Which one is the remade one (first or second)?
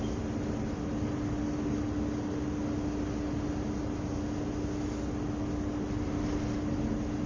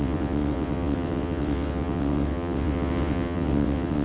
second